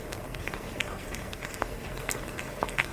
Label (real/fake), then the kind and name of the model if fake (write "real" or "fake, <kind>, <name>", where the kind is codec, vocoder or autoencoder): fake, codec, SNAC